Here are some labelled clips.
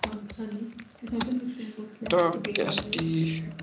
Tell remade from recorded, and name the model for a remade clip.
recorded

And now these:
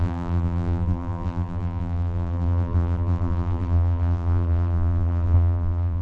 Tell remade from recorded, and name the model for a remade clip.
remade, vocoder, BigVGAN v2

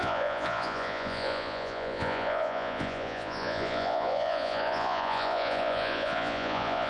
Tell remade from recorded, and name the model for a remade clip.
remade, vocoder, Vocos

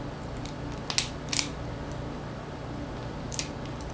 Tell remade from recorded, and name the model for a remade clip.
recorded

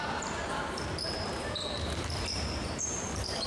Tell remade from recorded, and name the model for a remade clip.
remade, vocoder, BigVGAN v2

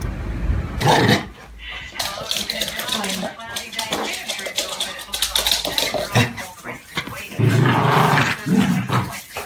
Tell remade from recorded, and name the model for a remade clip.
recorded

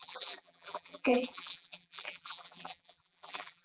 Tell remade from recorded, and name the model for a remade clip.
remade, vocoder, BigVGAN v2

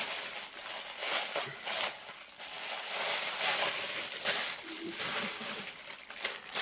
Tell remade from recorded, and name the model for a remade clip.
remade, vocoder, BigVGAN v2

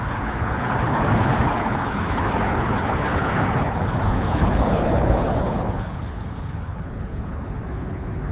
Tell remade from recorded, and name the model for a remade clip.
remade, codec, HILCodec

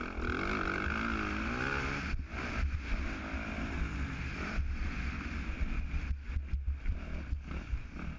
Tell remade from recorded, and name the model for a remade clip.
recorded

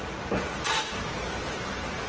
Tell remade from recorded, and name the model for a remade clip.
recorded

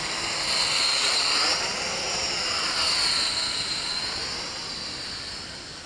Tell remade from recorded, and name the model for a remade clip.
recorded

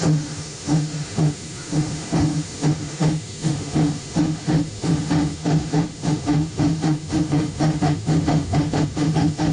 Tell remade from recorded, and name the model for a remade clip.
remade, autoencoder, DAC-VAE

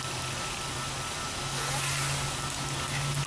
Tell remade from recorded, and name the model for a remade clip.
recorded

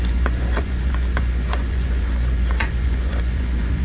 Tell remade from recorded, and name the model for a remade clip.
remade, vocoder, Vocos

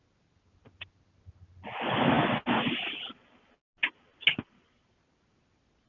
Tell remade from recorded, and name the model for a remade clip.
recorded